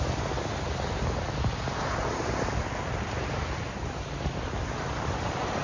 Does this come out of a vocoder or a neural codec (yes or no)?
no